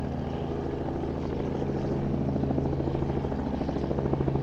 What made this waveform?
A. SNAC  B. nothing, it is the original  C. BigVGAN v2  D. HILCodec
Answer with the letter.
B